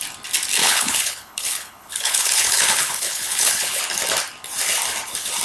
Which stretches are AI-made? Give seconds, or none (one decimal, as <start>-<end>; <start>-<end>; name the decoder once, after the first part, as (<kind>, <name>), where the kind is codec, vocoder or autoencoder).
0.6-3.8 (codec, HILCodec)

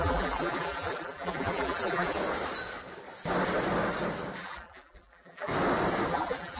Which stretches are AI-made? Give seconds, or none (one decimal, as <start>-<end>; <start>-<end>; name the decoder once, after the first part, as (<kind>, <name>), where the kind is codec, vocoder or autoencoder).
0.0-2.2 (vocoder, BigVGAN v2); 4.4-5.5; 6.1-6.6

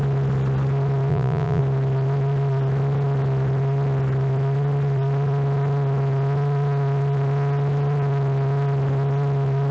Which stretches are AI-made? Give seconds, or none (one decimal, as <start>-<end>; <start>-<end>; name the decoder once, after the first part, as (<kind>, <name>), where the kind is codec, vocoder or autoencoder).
1.1-1.6 (vocoder, Vocos)

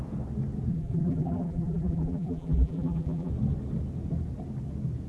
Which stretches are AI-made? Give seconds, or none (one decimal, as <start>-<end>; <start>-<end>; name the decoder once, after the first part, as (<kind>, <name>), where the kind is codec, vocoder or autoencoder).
0.7-3.3 (vocoder, BigVGAN v2)